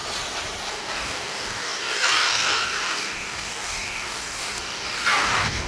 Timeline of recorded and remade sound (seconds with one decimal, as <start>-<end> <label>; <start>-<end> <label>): 0.0-0.7 recorded; 0.7-5.7 remade